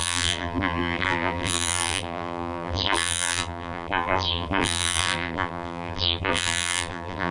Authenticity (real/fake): fake